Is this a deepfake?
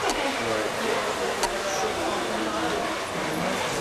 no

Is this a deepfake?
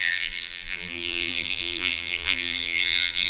yes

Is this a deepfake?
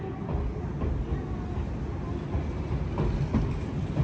no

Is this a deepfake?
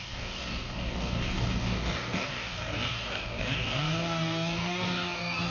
yes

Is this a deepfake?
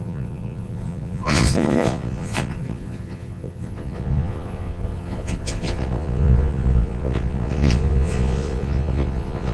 yes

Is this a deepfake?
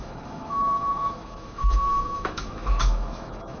yes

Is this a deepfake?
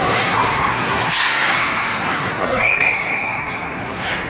yes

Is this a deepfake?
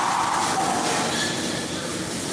no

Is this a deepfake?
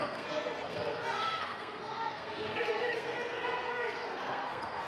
yes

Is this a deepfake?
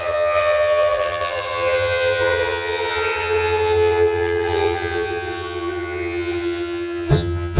yes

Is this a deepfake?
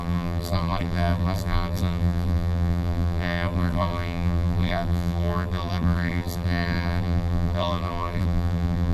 yes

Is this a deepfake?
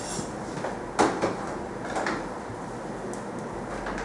no